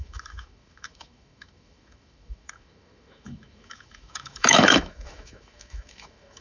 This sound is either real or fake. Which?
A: fake